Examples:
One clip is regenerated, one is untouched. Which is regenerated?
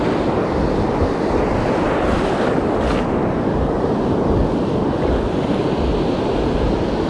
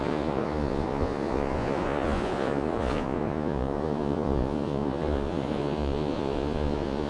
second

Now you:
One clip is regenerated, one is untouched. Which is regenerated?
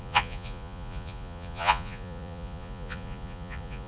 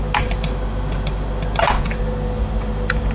first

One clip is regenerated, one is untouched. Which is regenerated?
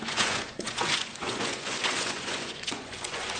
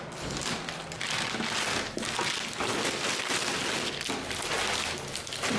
first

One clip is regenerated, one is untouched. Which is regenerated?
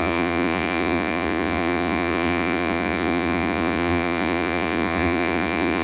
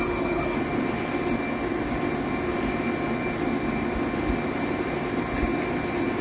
first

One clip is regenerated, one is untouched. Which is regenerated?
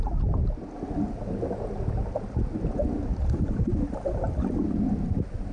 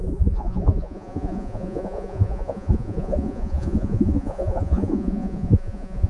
second